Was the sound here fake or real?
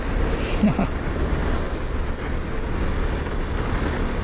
real